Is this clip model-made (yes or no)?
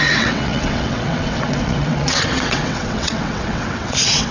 yes